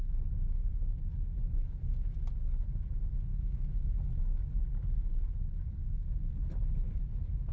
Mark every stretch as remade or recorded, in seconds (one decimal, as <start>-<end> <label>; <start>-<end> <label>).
0.0-3.3 recorded; 3.3-4.2 remade; 4.2-7.5 recorded